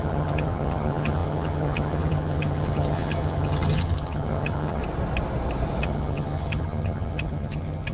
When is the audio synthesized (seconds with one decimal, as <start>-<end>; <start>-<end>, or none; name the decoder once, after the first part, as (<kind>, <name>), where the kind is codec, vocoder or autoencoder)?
0.0-4.8 (vocoder, HiFi-GAN); 5.8-7.9